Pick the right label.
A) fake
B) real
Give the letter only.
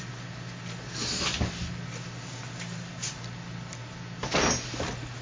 B